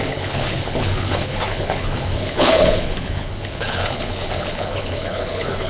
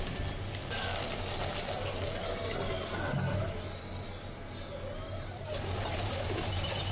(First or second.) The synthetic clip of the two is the first